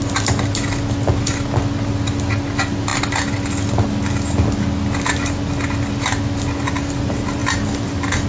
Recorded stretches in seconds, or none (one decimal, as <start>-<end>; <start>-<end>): 0.0-8.3